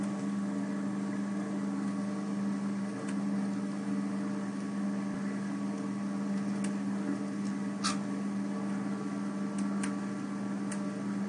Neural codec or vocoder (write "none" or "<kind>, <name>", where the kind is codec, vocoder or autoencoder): none